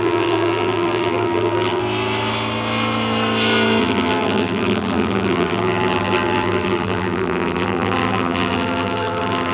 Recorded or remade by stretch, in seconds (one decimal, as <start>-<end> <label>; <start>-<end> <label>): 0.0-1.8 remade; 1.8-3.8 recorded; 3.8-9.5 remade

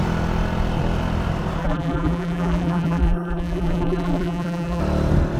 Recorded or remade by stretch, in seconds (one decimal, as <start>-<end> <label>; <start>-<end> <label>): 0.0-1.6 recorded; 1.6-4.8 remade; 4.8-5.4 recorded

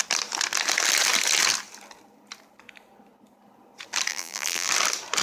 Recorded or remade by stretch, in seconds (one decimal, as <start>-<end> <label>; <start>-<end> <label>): 0.0-4.1 recorded; 4.1-4.7 remade; 4.7-5.2 recorded

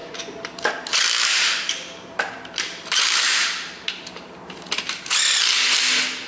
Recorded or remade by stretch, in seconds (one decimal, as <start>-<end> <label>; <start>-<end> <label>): 0.0-0.7 remade; 0.7-1.3 recorded; 1.3-5.1 remade; 5.1-6.3 recorded

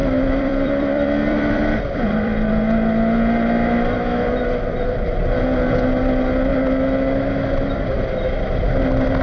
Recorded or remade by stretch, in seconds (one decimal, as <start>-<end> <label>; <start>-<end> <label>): 0.0-2.5 remade; 2.5-9.2 recorded